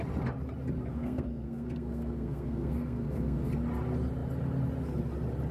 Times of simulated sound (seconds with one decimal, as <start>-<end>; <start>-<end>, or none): 0.9-3.5